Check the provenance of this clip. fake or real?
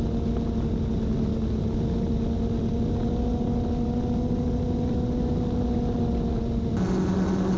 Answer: real